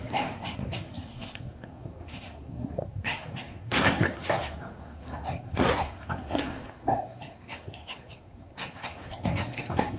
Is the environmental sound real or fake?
fake